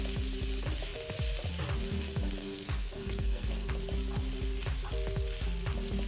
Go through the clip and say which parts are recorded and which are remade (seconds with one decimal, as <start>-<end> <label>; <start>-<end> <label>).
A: 0.0-2.4 recorded; 2.4-3.7 remade; 3.7-6.1 recorded